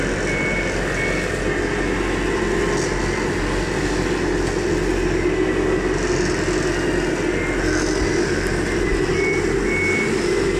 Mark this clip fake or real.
real